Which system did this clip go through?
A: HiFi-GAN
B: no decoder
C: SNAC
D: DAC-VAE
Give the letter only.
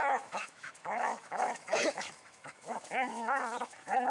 D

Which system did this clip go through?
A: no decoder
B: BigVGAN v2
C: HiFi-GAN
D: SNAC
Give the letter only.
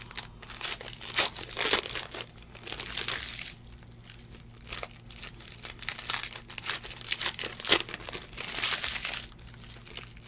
A